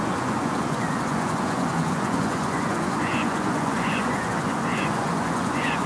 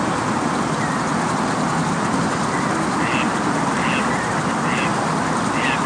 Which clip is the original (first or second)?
second